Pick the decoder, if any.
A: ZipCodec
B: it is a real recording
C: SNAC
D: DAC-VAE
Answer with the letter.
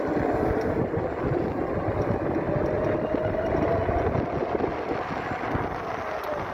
B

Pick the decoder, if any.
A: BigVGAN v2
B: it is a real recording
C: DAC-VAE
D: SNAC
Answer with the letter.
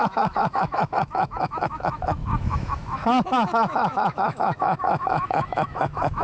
C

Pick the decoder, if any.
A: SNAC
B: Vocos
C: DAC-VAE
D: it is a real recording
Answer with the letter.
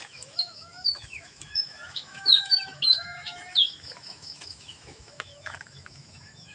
C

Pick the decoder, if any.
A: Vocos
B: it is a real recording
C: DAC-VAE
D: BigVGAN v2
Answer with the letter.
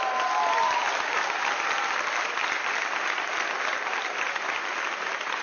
B